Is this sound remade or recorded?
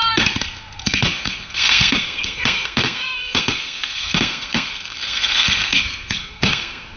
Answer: remade